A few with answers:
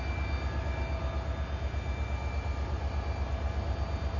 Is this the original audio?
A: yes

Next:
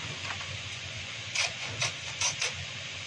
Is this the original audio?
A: no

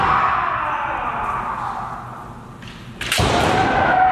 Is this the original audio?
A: yes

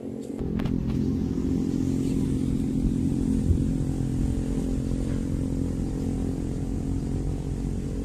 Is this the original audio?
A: yes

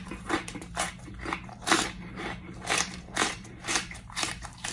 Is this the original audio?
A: no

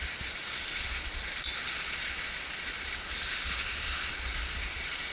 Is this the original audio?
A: yes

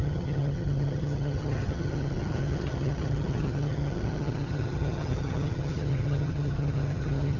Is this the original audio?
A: no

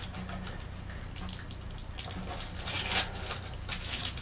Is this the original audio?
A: yes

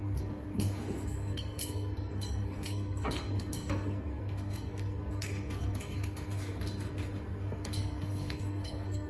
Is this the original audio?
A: no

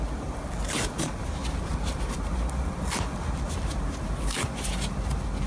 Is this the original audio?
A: yes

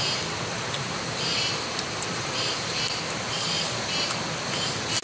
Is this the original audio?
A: no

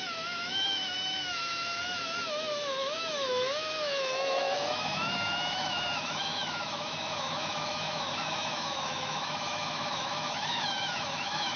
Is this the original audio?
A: no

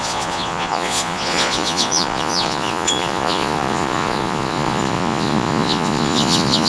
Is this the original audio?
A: no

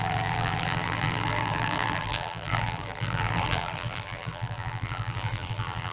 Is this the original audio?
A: no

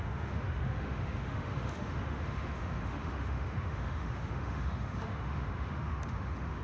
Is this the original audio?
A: no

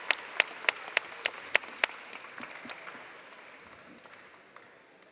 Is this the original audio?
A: yes